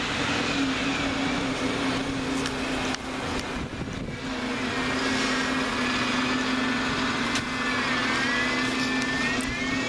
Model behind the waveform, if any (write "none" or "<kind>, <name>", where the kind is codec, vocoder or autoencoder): none